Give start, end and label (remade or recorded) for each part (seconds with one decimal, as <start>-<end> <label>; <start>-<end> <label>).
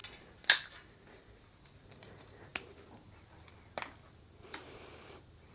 0.0-1.8 recorded; 1.8-2.5 remade; 2.5-4.2 recorded; 4.2-5.5 remade